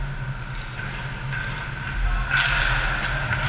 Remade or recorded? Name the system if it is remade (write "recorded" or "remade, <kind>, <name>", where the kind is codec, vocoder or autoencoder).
recorded